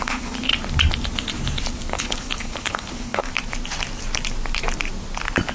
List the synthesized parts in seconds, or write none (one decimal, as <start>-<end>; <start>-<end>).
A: 0.0-0.5; 2.0-3.3